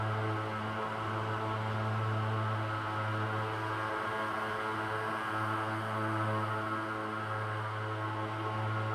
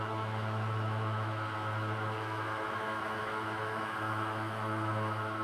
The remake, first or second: second